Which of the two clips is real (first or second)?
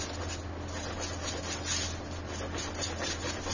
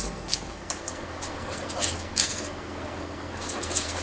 first